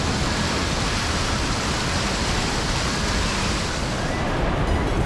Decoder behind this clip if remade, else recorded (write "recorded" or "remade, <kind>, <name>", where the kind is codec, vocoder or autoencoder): recorded